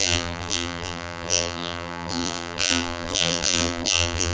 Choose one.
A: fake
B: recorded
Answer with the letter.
A